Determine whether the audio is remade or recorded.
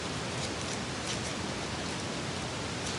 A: recorded